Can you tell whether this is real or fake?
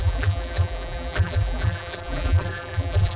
fake